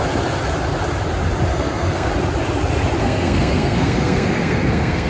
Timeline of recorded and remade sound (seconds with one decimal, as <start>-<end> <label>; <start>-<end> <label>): 0.0-1.5 recorded; 1.5-2.1 remade; 2.1-3.0 recorded; 3.0-5.1 remade